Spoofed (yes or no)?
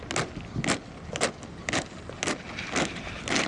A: no